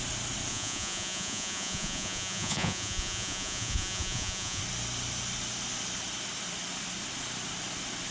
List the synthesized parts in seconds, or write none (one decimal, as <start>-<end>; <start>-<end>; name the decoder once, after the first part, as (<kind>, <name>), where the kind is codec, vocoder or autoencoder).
0.5-4.6 (vocoder, Vocos)